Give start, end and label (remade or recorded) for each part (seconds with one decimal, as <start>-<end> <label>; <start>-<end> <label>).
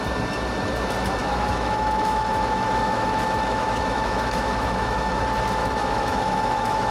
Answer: 0.0-1.2 recorded; 1.2-5.1 remade; 5.1-5.6 recorded; 5.6-6.9 remade